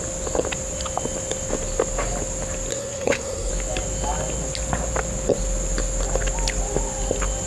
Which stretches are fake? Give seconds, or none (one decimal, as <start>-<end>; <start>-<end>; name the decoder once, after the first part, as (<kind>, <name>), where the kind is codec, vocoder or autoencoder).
2.7-3.5 (codec, SNAC)